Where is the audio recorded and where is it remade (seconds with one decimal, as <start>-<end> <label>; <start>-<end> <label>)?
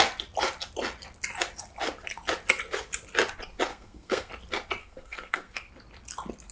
0.0-3.7 recorded; 3.7-4.3 remade; 4.3-4.8 recorded; 4.8-5.7 remade; 5.7-6.5 recorded